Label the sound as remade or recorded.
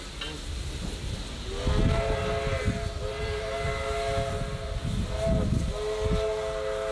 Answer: recorded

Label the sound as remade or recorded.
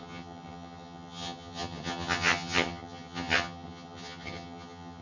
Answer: remade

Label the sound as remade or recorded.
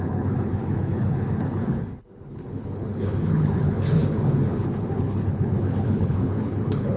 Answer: remade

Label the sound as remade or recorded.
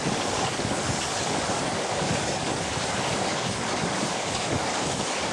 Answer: remade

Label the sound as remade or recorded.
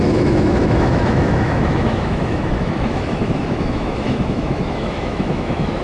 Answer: remade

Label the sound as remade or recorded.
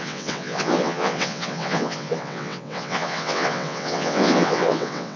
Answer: remade